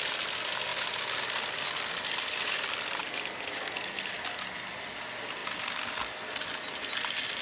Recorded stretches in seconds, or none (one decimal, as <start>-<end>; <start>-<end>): 0.0-7.4